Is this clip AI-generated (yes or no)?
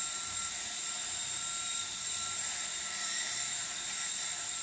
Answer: yes